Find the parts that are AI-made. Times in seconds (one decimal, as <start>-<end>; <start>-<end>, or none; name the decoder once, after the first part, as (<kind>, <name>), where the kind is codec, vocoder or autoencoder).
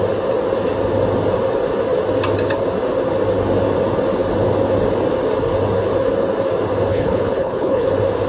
6.9-7.9 (codec, HILCodec)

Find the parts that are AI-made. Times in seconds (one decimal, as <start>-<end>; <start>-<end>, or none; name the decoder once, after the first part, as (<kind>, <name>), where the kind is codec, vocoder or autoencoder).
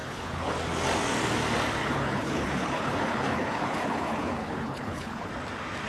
0.0-0.5 (codec, HILCodec); 1.8-5.3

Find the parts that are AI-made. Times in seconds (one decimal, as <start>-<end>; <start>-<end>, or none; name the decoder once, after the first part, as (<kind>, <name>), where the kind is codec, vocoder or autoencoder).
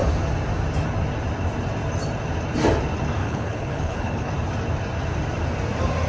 3.2-4.3 (codec, HILCodec)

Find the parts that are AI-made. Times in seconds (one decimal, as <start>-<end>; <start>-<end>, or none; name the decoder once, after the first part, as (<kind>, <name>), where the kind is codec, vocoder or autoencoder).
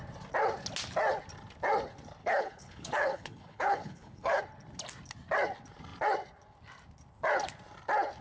2.2-4.4 (codec, HILCodec)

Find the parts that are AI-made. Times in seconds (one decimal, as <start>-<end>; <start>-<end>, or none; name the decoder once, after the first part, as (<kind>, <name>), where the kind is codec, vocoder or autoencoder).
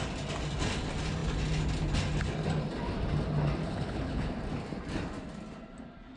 3.6-4.3 (codec, HILCodec)